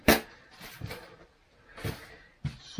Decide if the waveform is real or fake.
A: real